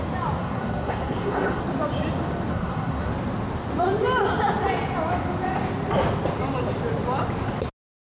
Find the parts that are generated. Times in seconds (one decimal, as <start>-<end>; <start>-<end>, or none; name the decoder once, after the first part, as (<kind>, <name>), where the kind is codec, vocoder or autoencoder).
0.4-1.6 (codec, SNAC); 2.5-3.1

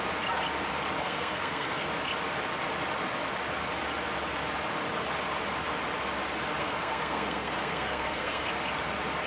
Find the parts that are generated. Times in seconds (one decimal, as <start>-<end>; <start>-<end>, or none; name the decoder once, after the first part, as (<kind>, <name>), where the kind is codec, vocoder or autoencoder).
1.0-1.9 (codec, SNAC); 6.6-8.5

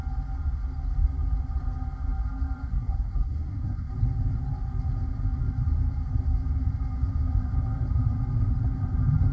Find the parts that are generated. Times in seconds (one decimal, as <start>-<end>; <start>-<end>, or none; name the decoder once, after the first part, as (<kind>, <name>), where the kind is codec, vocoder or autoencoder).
2.7-3.9 (codec, SNAC)

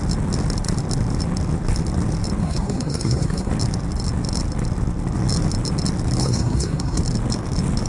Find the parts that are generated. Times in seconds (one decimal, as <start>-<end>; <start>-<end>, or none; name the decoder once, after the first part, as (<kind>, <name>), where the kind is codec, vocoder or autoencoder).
2.4-3.5 (codec, SNAC); 6.2-7.0

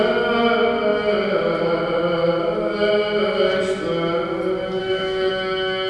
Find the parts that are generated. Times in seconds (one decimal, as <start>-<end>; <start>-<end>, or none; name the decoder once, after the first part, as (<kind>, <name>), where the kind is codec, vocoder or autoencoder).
4.8-5.3 (codec, SNAC)